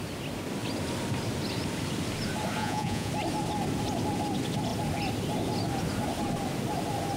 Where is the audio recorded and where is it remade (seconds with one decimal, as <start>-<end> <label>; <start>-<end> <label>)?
0.0-2.6 recorded; 2.6-3.1 remade; 3.1-7.2 recorded